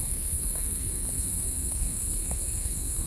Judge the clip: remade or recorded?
remade